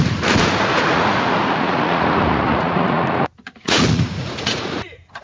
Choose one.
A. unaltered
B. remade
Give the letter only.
B